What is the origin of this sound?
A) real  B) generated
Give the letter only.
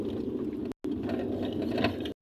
A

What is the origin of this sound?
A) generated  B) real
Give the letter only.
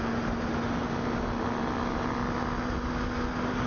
B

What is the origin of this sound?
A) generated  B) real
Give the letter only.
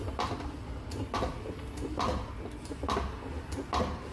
B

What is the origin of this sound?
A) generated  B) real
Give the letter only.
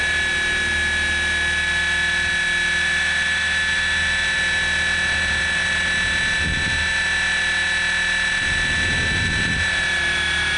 B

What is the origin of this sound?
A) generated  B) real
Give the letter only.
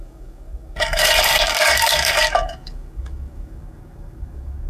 A